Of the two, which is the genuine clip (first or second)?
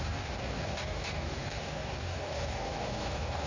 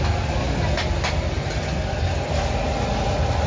second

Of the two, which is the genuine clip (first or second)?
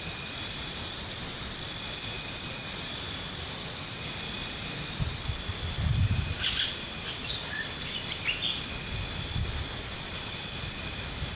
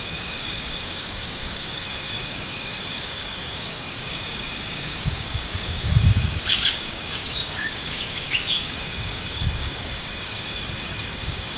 first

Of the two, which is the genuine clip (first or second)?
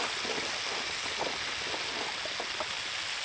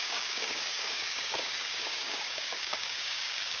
first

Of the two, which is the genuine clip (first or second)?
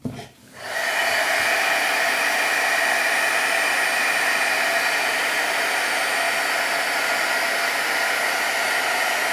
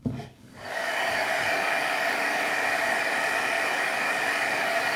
first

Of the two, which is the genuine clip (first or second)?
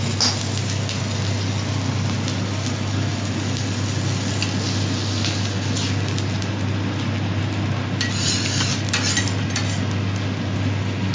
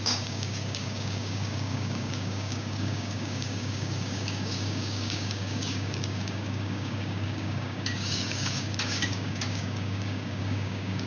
first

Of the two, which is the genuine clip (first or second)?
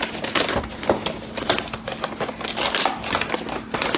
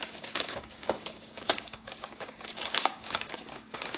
first